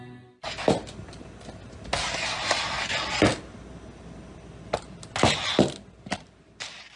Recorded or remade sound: recorded